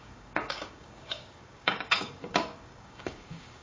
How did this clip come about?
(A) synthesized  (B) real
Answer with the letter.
A